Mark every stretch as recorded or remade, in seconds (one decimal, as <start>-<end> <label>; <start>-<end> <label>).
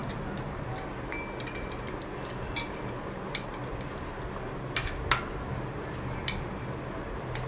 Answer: 0.0-7.5 recorded